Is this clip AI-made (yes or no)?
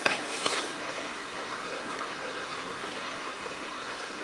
yes